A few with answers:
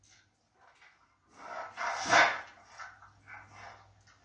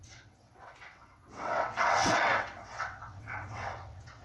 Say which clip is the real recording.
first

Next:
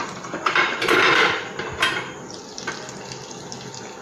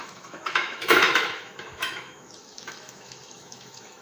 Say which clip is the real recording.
first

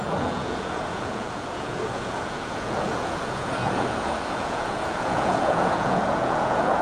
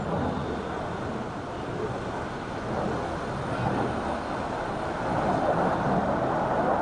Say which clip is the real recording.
second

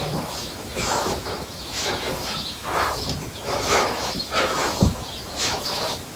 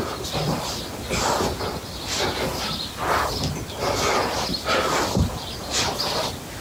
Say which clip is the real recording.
second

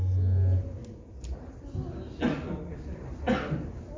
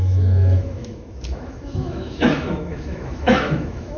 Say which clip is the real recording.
first